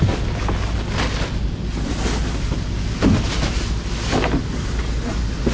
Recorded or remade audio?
recorded